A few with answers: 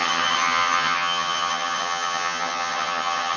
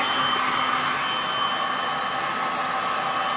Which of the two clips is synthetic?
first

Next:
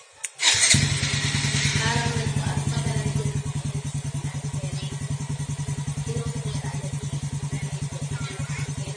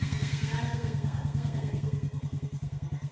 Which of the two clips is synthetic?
second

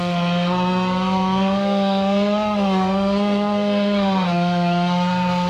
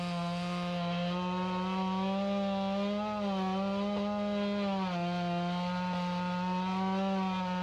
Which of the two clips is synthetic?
first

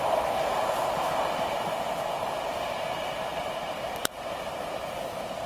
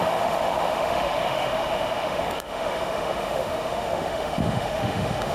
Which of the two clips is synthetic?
second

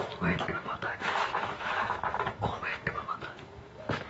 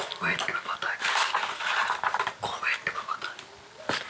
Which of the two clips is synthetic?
first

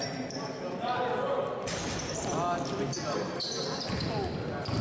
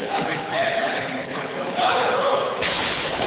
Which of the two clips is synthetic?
second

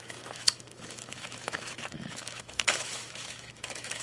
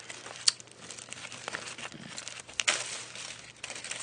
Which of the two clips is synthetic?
first